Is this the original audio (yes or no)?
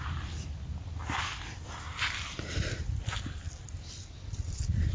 yes